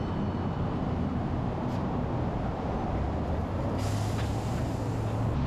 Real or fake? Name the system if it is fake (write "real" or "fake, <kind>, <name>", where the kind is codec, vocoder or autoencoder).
real